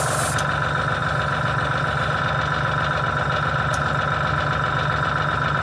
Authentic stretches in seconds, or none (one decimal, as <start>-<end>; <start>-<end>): 0.0-1.0; 2.2-5.6